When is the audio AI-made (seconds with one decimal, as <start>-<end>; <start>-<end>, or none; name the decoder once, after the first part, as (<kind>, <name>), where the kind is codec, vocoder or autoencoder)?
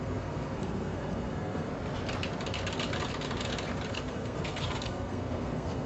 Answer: 0.0-1.7 (codec, SNAC); 3.9-5.9